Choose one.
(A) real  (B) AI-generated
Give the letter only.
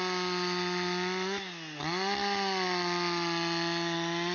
A